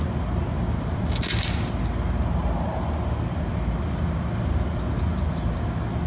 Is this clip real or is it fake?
real